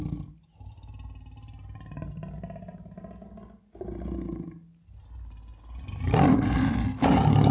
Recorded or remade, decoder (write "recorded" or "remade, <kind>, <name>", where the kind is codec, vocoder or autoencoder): recorded